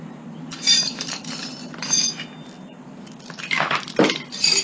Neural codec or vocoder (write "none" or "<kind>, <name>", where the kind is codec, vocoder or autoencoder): none